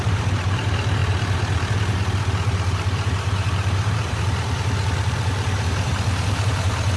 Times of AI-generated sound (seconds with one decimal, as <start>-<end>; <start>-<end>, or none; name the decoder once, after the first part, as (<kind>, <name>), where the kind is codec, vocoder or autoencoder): 0.0-7.0 (vocoder, BigVGAN v2)